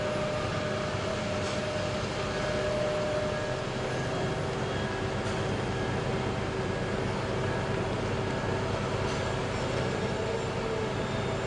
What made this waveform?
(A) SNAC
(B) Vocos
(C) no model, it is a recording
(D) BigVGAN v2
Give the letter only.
C